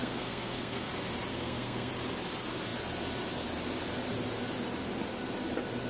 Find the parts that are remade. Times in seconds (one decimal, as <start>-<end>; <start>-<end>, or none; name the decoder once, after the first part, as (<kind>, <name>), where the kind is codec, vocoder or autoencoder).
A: 0.0-0.9 (codec, SNAC); 1.3-1.9